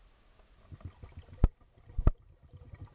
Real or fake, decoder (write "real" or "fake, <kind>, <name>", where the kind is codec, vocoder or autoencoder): real